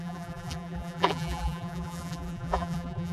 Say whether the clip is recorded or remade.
remade